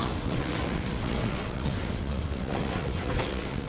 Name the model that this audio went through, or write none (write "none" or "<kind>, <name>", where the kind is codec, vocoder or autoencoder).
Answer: vocoder, WaveNeXt